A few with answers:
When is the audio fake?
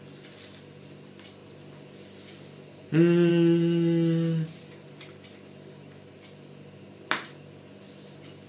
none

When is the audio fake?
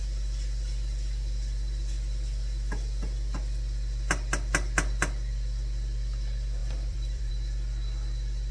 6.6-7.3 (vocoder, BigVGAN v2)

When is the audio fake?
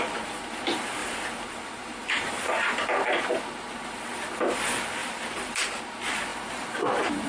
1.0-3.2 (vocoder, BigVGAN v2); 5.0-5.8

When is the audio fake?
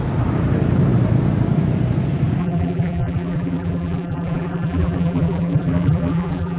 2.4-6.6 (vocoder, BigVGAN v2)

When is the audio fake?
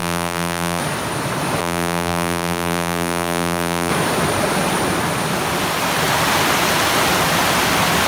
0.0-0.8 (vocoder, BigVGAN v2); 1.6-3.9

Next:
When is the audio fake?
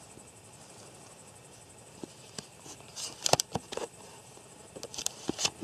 0.0-3.5 (vocoder, BigVGAN v2); 5.0-5.6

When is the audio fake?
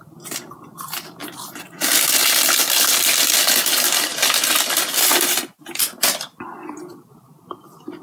0.0-1.2 (vocoder, BigVGAN v2); 2.6-4.1; 4.7-8.0